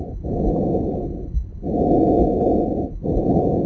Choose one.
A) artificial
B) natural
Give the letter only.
B